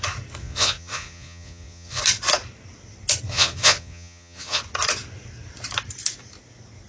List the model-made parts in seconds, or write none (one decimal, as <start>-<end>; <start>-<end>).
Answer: 0.4-2.0; 3.3-4.6